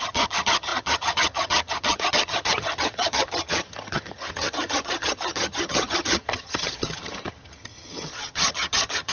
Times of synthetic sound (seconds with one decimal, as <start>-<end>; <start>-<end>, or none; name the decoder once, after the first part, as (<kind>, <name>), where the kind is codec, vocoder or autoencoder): 0.0-9.1 (vocoder, HiFi-GAN)